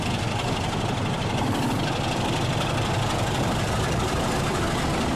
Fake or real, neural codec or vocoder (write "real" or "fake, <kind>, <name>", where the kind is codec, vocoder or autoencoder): fake, vocoder, BigVGAN v2